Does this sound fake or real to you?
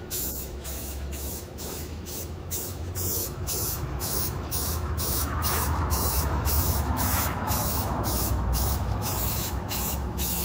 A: fake